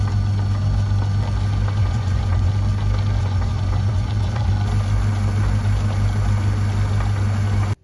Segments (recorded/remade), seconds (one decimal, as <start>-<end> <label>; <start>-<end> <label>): 0.0-1.8 recorded; 1.8-2.5 remade; 2.5-3.2 recorded; 3.2-4.5 remade; 4.5-7.8 recorded